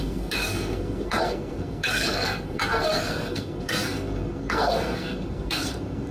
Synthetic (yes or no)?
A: yes